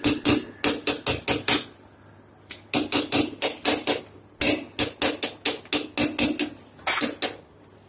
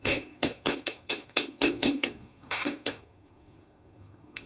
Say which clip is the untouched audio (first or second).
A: first